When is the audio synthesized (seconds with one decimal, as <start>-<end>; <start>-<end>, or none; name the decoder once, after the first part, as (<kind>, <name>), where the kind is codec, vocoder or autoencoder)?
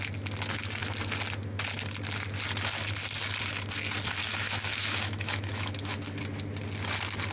4.2-6.2 (autoencoder, DAC-VAE)